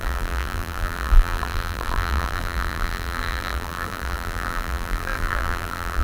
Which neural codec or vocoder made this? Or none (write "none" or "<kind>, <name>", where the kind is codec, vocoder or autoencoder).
vocoder, BigVGAN v2